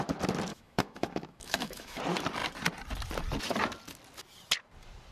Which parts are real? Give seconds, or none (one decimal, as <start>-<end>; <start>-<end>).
0.0-0.5; 2.0-5.1